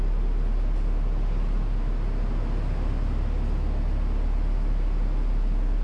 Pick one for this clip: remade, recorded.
recorded